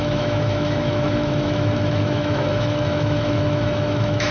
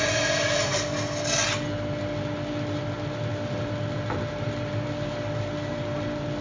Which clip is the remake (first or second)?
first